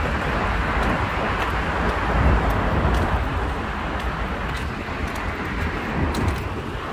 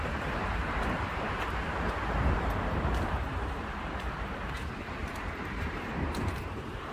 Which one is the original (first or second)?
first